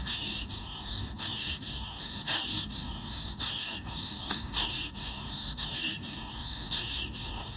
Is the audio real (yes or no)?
no